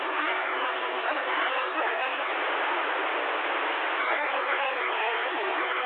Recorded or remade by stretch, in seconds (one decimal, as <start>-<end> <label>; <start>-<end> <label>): 0.0-2.3 remade; 2.3-4.0 recorded; 4.0-5.9 remade